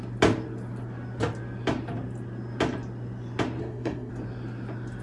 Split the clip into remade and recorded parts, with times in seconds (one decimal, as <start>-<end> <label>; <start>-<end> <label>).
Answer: 0.0-3.6 recorded; 3.6-4.1 remade; 4.1-5.0 recorded